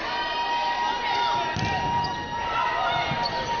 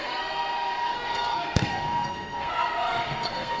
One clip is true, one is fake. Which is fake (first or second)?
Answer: second